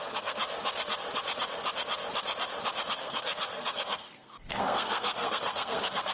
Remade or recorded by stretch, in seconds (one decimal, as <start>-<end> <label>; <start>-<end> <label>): 0.0-0.4 remade; 0.4-2.9 recorded; 2.9-6.1 remade